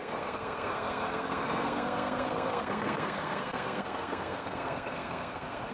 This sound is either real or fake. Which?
fake